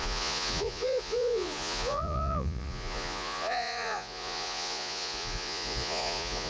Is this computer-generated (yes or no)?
yes